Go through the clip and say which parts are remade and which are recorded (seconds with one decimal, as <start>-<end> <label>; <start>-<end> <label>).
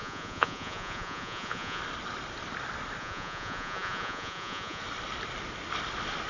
0.0-1.8 remade; 1.8-3.0 recorded; 3.0-4.8 remade; 4.8-6.3 recorded